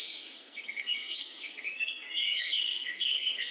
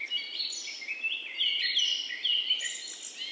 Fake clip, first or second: first